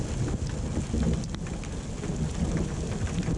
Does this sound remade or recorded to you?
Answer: recorded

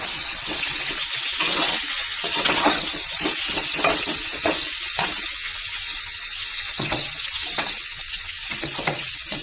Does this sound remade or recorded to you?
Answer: remade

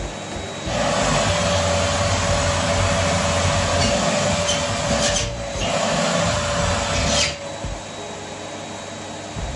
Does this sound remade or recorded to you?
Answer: recorded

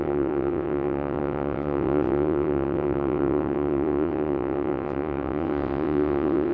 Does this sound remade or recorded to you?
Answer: remade